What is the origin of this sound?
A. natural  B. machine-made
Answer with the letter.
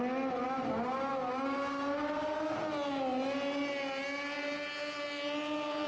A